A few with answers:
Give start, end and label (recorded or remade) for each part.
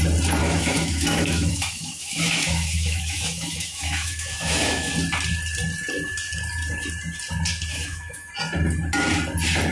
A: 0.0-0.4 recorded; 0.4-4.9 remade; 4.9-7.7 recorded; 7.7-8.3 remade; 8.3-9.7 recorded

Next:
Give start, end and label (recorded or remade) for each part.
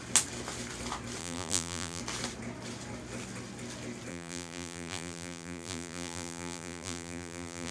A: 0.0-1.2 recorded; 1.2-2.0 remade; 2.0-4.1 recorded; 4.1-7.7 remade